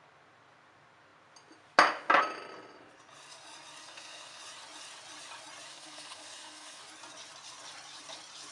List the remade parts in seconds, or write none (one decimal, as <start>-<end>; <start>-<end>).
3.8-4.4; 5.7-6.8